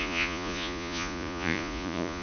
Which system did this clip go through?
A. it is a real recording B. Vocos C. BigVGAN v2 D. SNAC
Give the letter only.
B